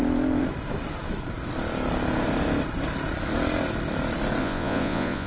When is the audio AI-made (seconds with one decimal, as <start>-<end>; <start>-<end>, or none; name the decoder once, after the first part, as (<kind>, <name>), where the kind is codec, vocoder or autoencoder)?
4.4-5.3 (vocoder, Vocos)